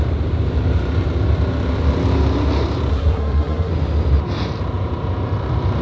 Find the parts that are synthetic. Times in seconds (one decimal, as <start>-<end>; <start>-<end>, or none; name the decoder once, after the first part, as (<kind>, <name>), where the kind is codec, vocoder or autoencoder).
2.9-3.7 (codec, SNAC)